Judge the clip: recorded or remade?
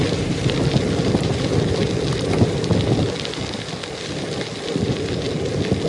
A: recorded